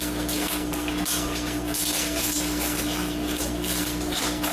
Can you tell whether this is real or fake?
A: fake